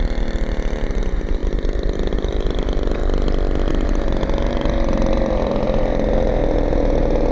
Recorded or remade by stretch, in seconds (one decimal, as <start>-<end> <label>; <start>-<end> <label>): 0.0-3.0 remade; 3.0-3.7 recorded; 3.7-6.4 remade; 6.4-7.3 recorded